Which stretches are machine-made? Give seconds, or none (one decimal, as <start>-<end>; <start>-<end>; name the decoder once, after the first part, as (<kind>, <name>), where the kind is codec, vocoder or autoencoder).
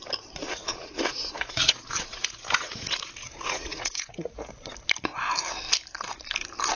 0.4-4.5 (vocoder, Vocos)